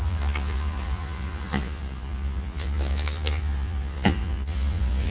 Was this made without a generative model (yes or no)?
no